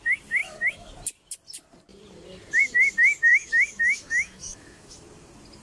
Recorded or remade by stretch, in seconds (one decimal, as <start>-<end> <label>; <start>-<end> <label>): 0.0-0.4 recorded; 0.4-0.9 remade; 0.9-3.3 recorded; 3.3-5.0 remade; 5.0-5.6 recorded

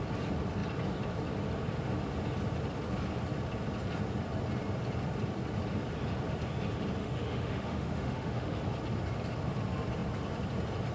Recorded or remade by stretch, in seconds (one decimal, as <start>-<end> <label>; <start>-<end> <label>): 0.0-7.0 recorded; 7.0-8.6 remade; 8.6-10.9 recorded

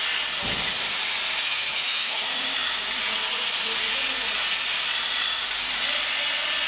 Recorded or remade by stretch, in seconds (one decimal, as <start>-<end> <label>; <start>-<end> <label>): 0.0-1.4 recorded; 1.4-2.2 remade; 2.2-6.7 recorded

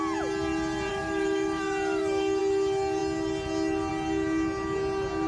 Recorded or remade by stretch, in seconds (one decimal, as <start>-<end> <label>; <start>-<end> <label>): 0.0-0.9 recorded; 0.9-2.4 remade; 2.4-5.3 recorded